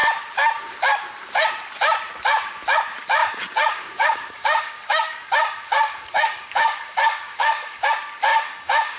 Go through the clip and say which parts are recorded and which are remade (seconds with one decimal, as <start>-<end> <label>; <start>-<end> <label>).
0.0-3.2 recorded; 3.2-7.9 remade; 7.9-8.3 recorded; 8.3-9.0 remade